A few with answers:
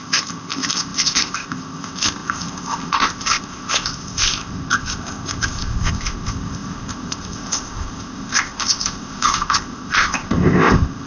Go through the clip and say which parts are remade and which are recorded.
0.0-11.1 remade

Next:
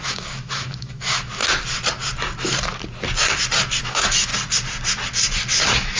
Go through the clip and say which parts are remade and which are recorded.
0.0-1.4 remade; 1.4-3.8 recorded; 3.8-4.3 remade; 4.3-5.6 recorded; 5.6-6.0 remade

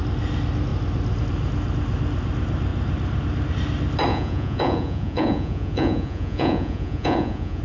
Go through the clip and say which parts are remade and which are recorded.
0.0-4.1 recorded; 4.1-7.6 remade

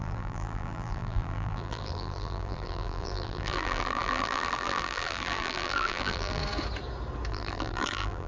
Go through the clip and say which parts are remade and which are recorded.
0.0-6.4 remade; 6.4-7.3 recorded; 7.3-8.3 remade

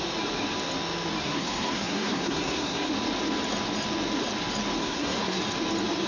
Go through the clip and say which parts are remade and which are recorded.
0.0-1.2 recorded; 1.2-2.9 remade; 2.9-4.8 recorded; 4.8-5.4 remade; 5.4-6.1 recorded

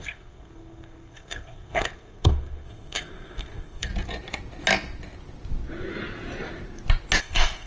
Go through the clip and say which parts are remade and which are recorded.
0.0-3.9 remade; 3.9-7.2 recorded; 7.2-7.7 remade

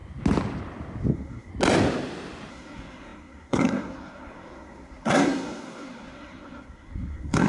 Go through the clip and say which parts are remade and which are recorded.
0.0-1.1 recorded; 1.1-1.5 remade; 1.5-2.5 recorded; 2.5-7.5 remade